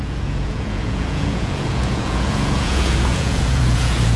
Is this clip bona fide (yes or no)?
no